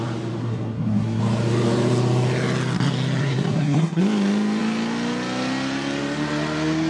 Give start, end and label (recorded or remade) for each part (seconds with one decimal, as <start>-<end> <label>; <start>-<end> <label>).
0.0-0.4 recorded; 0.4-1.2 remade; 1.2-3.2 recorded; 3.2-4.0 remade; 4.0-6.9 recorded